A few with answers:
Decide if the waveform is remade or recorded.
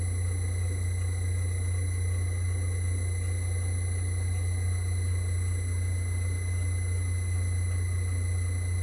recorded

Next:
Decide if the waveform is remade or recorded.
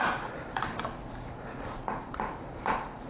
remade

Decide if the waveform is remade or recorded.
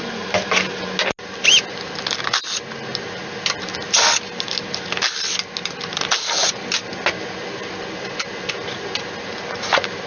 recorded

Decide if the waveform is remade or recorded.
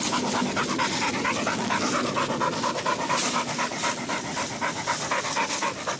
recorded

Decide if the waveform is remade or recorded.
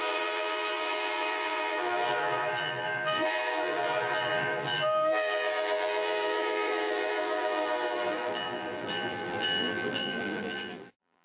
remade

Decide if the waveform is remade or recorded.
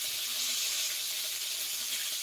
remade